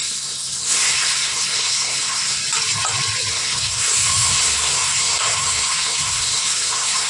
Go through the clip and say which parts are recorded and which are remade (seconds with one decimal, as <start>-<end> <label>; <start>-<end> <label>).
0.0-2.4 remade; 2.4-3.3 recorded; 3.3-7.1 remade